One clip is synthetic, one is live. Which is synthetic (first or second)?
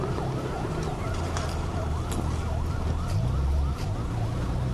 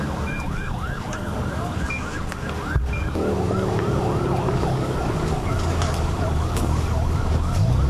second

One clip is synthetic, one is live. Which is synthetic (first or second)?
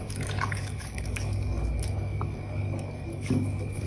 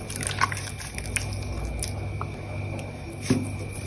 first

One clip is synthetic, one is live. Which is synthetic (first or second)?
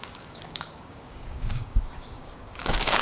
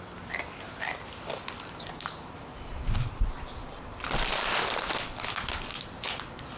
first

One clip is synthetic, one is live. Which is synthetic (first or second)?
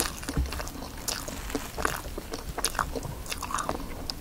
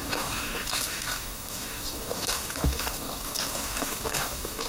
second